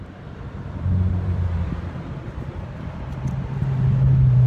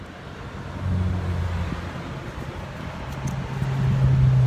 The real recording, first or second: second